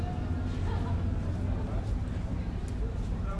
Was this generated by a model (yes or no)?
no